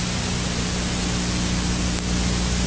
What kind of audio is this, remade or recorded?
recorded